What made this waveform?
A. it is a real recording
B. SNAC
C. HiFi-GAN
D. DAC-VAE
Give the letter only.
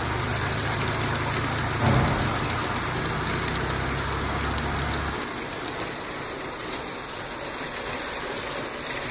A